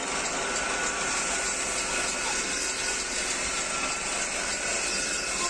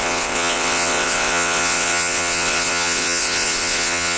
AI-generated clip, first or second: second